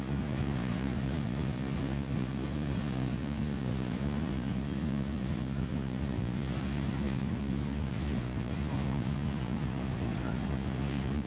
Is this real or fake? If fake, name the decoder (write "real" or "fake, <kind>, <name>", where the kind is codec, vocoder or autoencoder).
fake, vocoder, Vocos